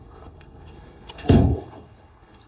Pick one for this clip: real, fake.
fake